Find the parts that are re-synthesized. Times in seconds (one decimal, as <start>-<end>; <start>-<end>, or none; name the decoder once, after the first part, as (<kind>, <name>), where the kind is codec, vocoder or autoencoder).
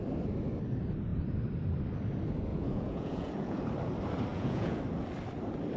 2.5-3.6 (vocoder, Vocos); 4.3-4.8